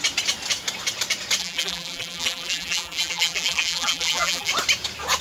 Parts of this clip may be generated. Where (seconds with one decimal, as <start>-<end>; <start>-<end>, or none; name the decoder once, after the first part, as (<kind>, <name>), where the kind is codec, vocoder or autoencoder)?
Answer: 1.4-4.5 (vocoder, BigVGAN v2)

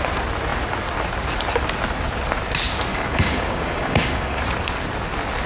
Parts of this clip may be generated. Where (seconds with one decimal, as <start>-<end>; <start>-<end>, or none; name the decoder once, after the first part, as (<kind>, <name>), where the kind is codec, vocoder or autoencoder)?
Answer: 2.9-4.4 (codec, DAC)

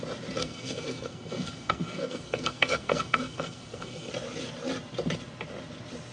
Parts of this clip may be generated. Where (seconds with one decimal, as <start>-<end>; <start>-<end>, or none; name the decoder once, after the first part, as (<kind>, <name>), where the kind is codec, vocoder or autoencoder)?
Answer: 0.4-4.1 (codec, SNAC)

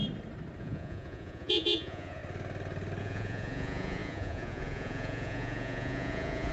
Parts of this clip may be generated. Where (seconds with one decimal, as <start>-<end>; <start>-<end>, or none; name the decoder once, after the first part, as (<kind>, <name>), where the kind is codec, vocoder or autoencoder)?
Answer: 0.6-2.2 (vocoder, Vocos); 3.0-6.5

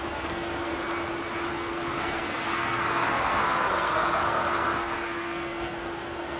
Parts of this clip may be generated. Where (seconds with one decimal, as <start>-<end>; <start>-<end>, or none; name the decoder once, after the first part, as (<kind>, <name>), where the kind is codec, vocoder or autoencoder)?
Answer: 0.0-0.7 (codec, SNAC); 1.5-6.4

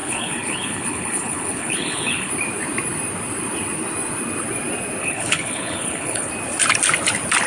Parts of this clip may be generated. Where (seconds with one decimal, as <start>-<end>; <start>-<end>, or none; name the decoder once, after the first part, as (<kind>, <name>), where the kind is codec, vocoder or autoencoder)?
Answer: 0.0-2.3 (codec, HILCodec); 5.0-6.3

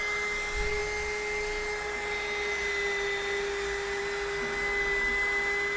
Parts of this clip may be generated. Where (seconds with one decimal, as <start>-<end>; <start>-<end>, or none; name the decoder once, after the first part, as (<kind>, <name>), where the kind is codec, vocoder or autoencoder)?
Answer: none

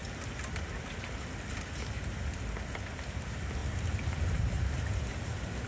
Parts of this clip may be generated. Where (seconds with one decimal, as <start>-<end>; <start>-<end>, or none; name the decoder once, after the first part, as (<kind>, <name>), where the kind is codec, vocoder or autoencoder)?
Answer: 3.6-5.1 (vocoder, BigVGAN v2)